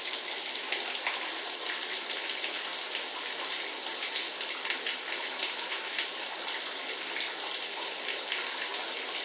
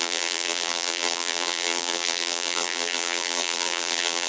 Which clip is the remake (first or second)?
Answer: second